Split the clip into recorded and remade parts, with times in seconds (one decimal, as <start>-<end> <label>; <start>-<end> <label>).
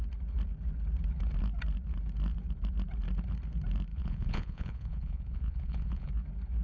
0.0-3.9 recorded; 3.9-6.1 remade; 6.1-6.6 recorded